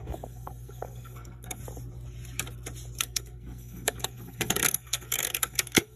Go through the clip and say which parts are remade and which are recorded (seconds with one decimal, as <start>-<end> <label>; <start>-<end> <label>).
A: 0.0-1.6 remade; 1.6-3.0 recorded; 3.0-6.0 remade